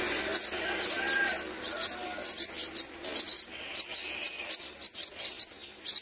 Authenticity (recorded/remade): recorded